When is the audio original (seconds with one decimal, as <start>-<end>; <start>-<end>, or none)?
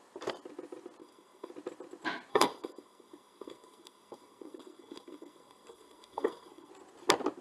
0.0-1.0; 1.5-2.3; 6.7-7.4